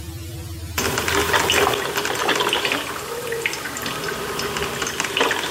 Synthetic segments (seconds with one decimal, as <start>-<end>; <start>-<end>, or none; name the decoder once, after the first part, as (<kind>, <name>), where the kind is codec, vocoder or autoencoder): none